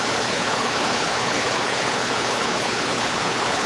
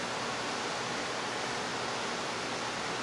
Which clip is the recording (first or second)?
second